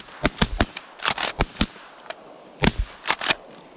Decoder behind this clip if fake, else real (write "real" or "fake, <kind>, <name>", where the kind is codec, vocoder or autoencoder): real